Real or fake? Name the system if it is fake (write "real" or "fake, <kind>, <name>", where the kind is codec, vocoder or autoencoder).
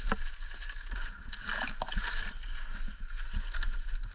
real